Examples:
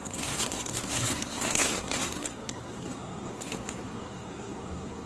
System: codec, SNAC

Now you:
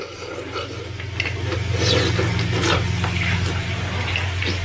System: none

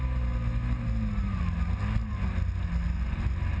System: none